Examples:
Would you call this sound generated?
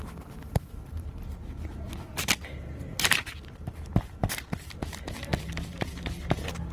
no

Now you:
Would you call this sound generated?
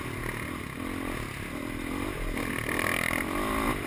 no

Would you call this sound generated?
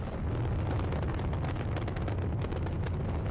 no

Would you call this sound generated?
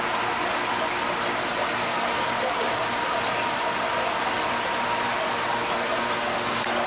no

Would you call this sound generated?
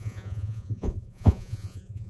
yes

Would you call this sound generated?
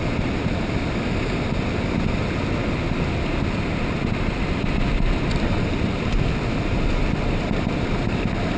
no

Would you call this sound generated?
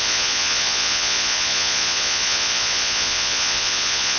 yes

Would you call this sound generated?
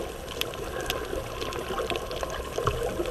no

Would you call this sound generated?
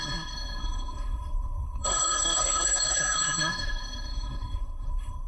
yes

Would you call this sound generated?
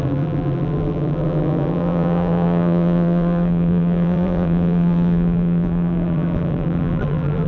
yes